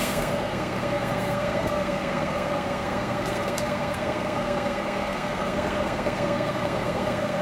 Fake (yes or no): yes